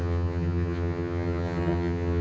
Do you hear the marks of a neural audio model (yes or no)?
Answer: yes